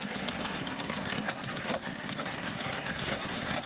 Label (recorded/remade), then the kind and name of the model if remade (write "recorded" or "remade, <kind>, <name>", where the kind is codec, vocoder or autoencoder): remade, codec, SNAC